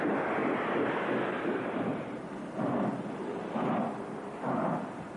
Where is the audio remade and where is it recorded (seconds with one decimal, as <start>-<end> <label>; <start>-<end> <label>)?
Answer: 0.0-1.9 recorded; 1.9-3.8 remade; 3.8-5.2 recorded